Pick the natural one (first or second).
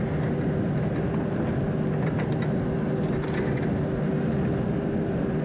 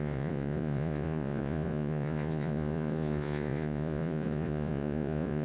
first